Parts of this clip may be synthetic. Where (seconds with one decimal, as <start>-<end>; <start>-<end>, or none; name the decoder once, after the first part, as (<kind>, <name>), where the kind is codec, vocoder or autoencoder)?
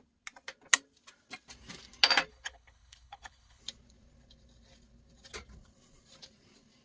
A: 2.3-3.6 (codec, HILCodec)